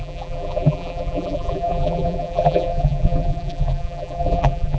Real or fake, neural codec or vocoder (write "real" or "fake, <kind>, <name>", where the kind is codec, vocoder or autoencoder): fake, vocoder, BigVGAN v2